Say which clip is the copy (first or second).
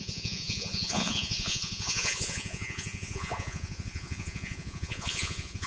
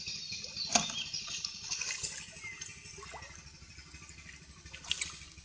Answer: first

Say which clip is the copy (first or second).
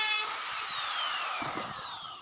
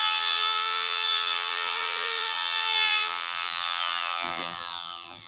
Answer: second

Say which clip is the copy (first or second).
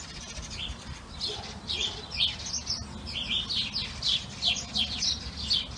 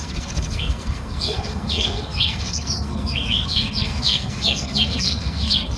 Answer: second